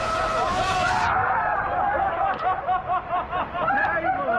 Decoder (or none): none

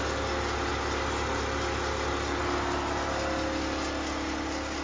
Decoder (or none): none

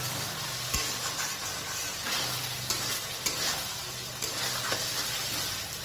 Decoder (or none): none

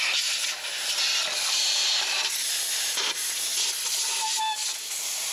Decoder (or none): none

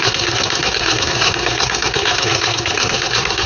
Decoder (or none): codec, SNAC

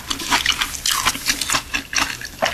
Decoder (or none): none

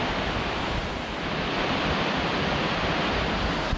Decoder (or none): none